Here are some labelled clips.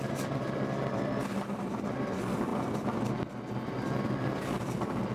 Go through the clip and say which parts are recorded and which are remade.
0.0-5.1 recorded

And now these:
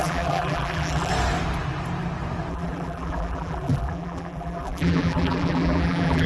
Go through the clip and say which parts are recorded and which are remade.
0.0-1.1 remade; 1.1-2.5 recorded; 2.5-6.3 remade

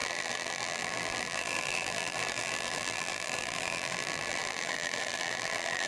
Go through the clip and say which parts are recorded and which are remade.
0.0-5.9 remade